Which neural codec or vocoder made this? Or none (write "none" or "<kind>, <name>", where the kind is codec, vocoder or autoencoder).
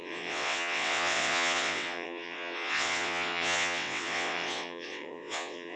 vocoder, WaveNeXt